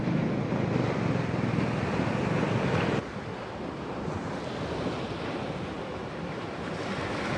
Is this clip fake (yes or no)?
yes